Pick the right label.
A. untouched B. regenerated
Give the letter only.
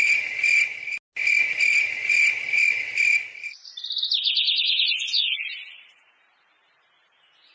A